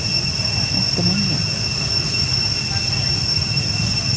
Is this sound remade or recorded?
recorded